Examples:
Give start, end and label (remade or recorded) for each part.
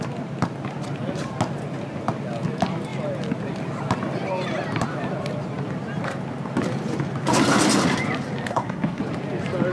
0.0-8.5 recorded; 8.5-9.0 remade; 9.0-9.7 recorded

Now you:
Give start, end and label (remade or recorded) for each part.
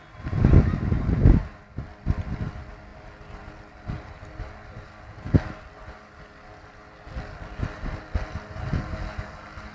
0.0-9.7 recorded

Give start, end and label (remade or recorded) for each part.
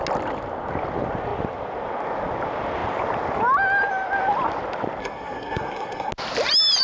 0.0-5.0 recorded; 5.0-6.1 remade; 6.1-6.8 recorded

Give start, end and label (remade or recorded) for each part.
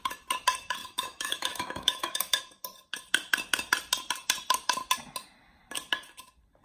0.0-0.8 recorded; 0.8-2.4 remade; 2.4-6.6 recorded